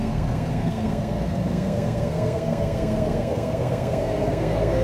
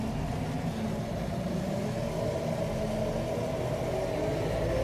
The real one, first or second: second